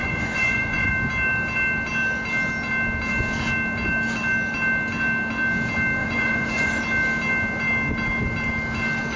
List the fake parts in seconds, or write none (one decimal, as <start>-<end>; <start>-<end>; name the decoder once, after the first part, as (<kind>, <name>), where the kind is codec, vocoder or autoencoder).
0.0-0.9 (vocoder, Vocos); 6.0-6.8